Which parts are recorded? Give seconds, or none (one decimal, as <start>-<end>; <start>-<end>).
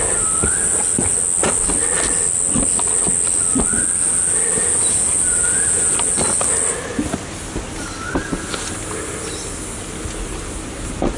0.0-11.2